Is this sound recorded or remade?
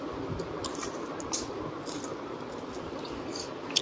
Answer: recorded